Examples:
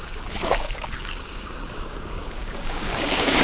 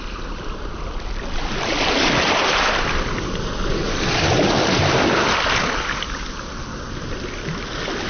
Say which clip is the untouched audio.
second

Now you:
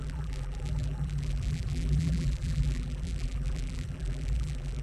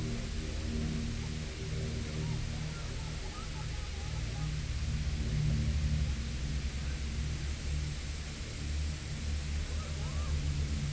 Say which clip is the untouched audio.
second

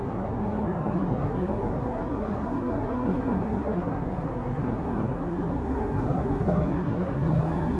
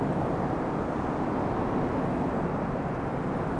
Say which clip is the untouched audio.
second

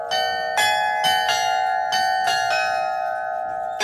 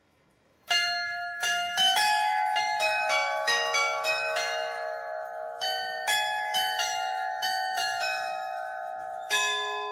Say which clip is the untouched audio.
first